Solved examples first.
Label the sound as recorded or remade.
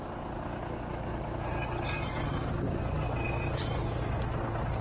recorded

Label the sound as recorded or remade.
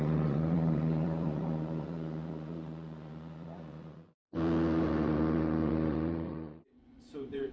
remade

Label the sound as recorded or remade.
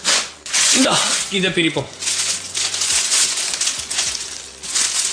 remade